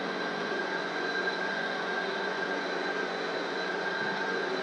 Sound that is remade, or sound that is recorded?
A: remade